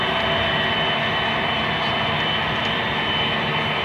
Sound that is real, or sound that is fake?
real